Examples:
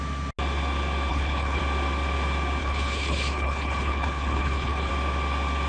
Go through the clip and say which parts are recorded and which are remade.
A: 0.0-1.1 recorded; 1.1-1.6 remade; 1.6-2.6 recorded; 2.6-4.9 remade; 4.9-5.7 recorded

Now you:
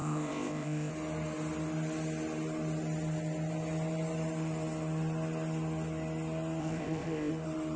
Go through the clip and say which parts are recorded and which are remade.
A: 0.0-0.9 remade; 0.9-6.6 recorded; 6.6-7.3 remade; 7.3-7.8 recorded

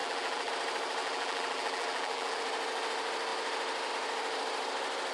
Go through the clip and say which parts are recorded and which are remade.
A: 0.0-0.5 remade; 0.5-1.0 recorded; 1.0-2.4 remade; 2.4-5.1 recorded

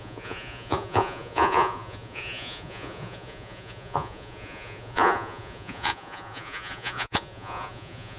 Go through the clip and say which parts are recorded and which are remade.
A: 0.0-8.2 remade